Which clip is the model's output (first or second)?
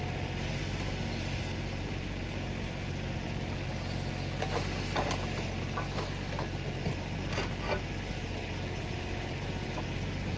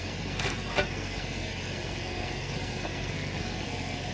second